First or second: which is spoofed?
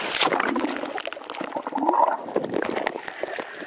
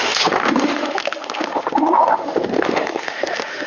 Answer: second